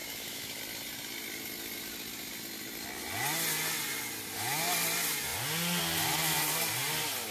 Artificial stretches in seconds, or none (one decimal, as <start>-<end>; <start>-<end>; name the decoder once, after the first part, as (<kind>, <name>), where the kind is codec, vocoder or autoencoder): 0.0-0.6 (autoencoder, DAC-VAE)